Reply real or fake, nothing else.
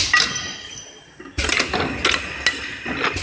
real